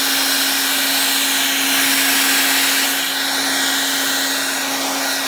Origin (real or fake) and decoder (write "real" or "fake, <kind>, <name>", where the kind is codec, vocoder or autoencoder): real